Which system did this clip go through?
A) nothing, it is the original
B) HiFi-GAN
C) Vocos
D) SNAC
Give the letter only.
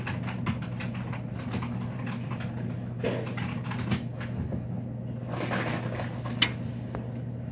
A